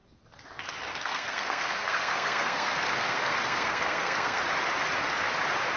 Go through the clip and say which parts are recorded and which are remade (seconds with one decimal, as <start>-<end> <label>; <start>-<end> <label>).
0.0-0.9 recorded; 0.9-4.4 remade; 4.4-5.8 recorded